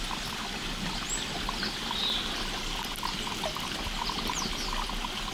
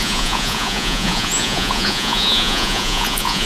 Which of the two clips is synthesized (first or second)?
second